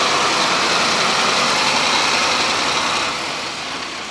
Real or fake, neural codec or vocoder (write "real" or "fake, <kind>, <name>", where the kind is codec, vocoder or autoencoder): real